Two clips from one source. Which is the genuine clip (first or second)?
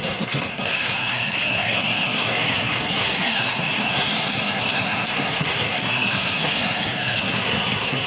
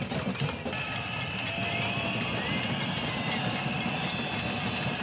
second